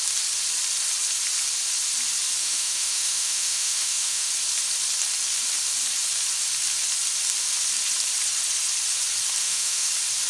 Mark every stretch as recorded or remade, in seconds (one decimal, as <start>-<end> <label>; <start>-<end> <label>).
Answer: 0.0-2.4 recorded; 2.4-4.3 remade; 4.3-9.4 recorded; 9.4-9.9 remade; 9.9-10.3 recorded

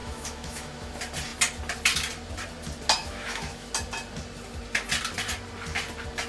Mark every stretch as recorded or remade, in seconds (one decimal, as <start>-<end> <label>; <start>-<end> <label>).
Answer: 0.0-0.9 remade; 0.9-3.0 recorded; 3.0-3.7 remade; 3.7-6.3 recorded

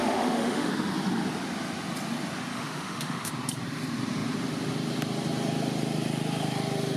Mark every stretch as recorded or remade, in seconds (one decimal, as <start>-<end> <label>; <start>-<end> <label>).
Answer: 0.0-0.7 remade; 0.7-2.5 recorded; 2.5-3.3 remade; 3.3-7.0 recorded

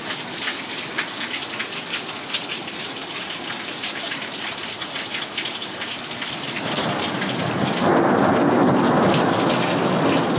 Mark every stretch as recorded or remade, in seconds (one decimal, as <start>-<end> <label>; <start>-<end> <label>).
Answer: 0.0-10.4 recorded

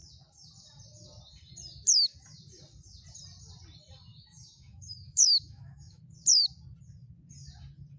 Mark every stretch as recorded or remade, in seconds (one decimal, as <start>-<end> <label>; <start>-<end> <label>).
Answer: 0.0-4.1 recorded; 4.1-6.0 remade; 6.0-8.0 recorded

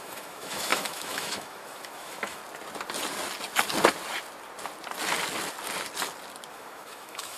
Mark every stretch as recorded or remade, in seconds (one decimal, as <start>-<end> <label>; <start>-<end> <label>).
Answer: 0.0-2.4 remade; 2.4-6.5 recorded; 6.5-7.4 remade

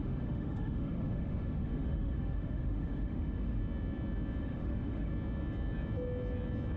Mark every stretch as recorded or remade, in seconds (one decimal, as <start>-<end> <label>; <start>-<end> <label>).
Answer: 0.0-3.6 remade; 3.6-4.4 recorded; 4.4-5.1 remade; 5.1-6.8 recorded

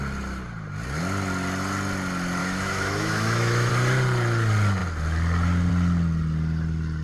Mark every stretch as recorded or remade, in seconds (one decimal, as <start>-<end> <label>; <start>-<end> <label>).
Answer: 0.0-2.4 recorded; 2.4-3.7 remade; 3.7-7.0 recorded